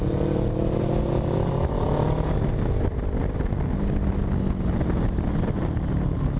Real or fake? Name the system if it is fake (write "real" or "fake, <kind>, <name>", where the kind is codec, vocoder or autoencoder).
real